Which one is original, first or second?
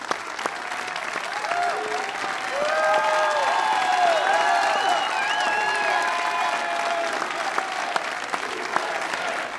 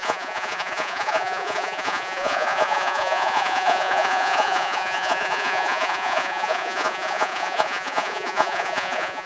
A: first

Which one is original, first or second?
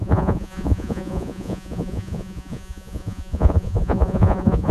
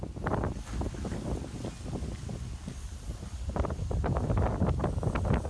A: second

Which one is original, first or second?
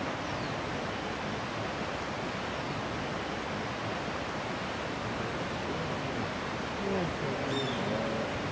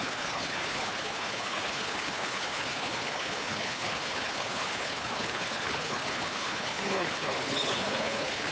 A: first